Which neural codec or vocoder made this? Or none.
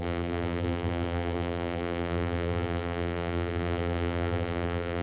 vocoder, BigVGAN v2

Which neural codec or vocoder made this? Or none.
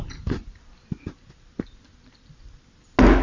none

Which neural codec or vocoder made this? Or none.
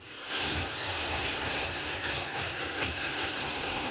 codec, SNAC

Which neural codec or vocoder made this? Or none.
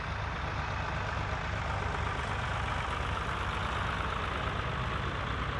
none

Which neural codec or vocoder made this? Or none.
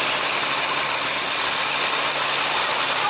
none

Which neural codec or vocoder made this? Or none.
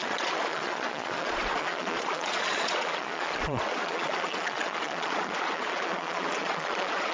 vocoder, Vocos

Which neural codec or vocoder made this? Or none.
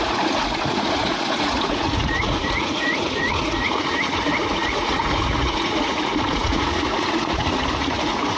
vocoder, Vocos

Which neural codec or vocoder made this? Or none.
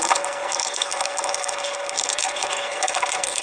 codec, SNAC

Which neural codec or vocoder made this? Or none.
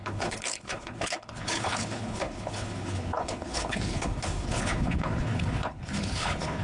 codec, HILCodec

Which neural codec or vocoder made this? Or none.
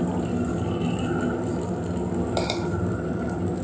none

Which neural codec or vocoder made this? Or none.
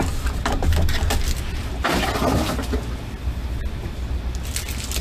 none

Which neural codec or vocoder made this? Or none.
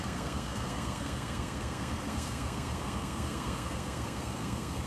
codec, SNAC